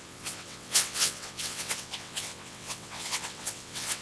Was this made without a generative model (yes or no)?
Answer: no